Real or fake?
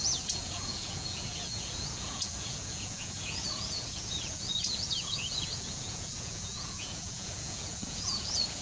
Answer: fake